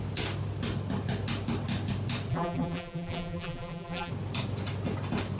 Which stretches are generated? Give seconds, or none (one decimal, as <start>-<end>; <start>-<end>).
2.3-4.1